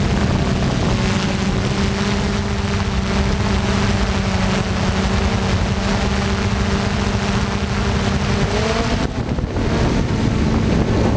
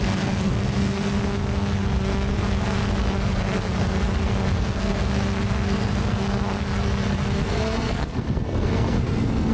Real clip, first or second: first